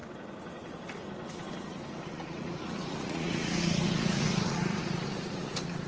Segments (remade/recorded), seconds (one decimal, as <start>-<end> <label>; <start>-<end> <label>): 0.0-2.1 recorded; 2.1-5.9 remade